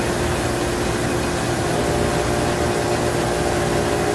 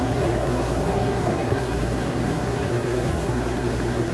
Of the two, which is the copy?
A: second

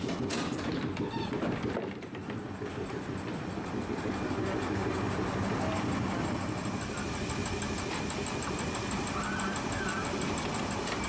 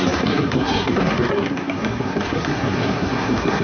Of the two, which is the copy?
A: second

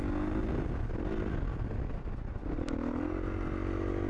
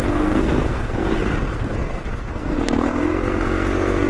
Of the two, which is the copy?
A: second